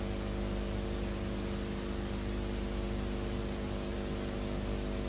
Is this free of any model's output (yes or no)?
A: yes